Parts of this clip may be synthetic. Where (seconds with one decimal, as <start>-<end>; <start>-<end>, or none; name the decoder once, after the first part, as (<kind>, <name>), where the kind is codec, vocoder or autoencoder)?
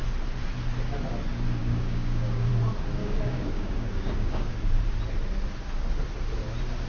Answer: 1.6-2.5 (codec, DAC); 3.0-4.5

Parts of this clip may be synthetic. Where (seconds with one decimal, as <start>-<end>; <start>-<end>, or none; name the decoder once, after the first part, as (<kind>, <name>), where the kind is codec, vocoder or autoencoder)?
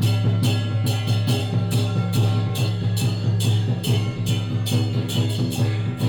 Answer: 1.4-4.3 (codec, DAC); 5.0-6.1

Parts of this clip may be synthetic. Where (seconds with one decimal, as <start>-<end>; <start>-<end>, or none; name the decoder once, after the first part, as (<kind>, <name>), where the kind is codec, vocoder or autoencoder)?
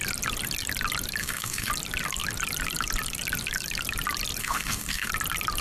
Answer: 1.2-1.7 (codec, DAC); 4.4-5.1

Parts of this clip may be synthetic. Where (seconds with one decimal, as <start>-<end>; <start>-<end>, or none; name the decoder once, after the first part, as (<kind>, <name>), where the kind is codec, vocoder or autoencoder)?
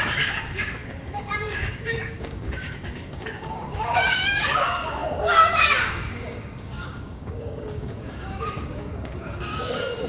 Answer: 0.0-10.1 (codec, DAC)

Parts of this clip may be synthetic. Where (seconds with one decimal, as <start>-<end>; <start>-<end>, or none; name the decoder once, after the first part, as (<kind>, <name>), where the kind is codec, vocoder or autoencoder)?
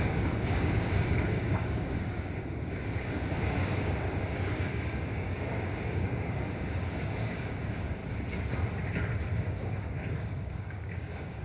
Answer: 0.0-8.0 (codec, DAC); 9.3-11.4